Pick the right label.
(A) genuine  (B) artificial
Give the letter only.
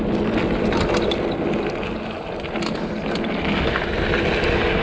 A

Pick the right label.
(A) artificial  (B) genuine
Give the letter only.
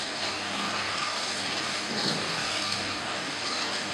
A